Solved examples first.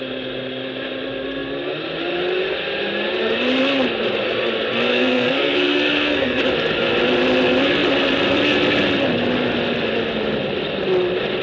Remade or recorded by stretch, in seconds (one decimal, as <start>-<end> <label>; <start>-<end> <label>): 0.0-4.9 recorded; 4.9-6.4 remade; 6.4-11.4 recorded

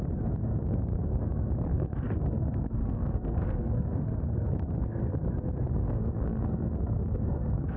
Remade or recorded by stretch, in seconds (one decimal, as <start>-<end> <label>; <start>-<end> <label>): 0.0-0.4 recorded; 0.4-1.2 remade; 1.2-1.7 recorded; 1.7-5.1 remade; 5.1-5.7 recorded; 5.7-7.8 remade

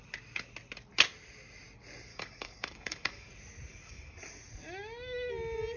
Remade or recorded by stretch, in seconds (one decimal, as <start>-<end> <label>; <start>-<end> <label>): 0.0-2.1 recorded; 2.1-3.3 remade; 3.3-3.7 recorded; 3.7-4.3 remade; 4.3-5.8 recorded

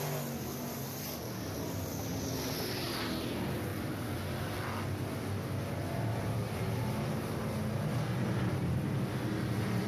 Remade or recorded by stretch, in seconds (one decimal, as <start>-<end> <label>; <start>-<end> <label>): 0.0-9.9 recorded

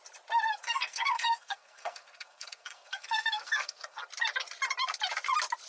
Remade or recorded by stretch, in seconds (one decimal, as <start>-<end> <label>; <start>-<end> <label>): 0.0-0.6 recorded; 0.6-4.0 remade; 4.0-5.7 recorded